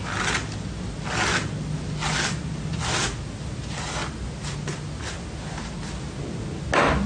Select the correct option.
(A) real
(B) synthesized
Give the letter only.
A